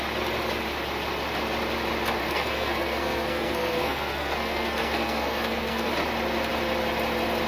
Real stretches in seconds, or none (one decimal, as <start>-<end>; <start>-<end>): 0.0-2.2; 5.9-7.5